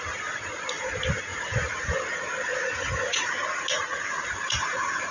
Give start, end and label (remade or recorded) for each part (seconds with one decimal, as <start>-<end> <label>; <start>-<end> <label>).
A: 0.0-1.3 recorded; 1.3-2.0 remade; 2.0-2.5 recorded; 2.5-3.3 remade; 3.3-3.9 recorded; 3.9-5.1 remade